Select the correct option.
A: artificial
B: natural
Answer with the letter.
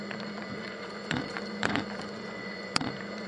A